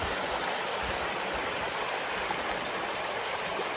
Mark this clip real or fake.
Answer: real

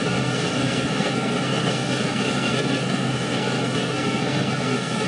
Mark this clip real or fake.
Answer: fake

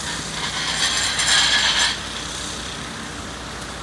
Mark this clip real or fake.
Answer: real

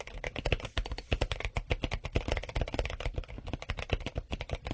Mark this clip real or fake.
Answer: real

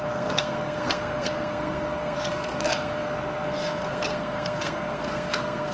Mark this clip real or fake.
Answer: fake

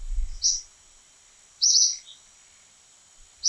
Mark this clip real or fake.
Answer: real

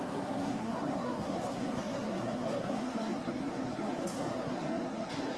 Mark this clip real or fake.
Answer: fake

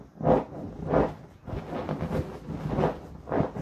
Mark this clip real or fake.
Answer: real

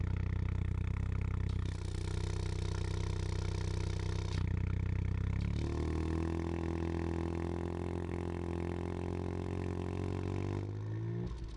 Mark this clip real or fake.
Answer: real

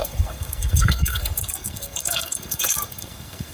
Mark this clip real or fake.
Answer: fake